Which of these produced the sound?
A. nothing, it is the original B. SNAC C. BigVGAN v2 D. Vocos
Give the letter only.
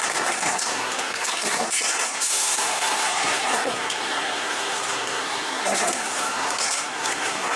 B